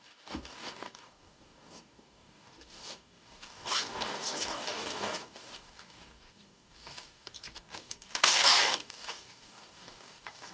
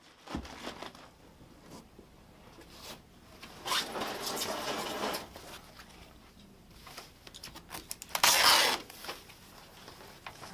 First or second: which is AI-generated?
first